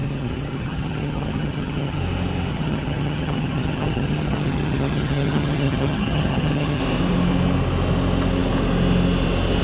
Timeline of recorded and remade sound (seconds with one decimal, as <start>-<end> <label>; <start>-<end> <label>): 0.0-2.0 remade; 2.0-2.5 recorded; 2.5-6.8 remade; 6.8-9.6 recorded